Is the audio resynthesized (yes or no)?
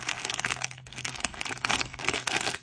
yes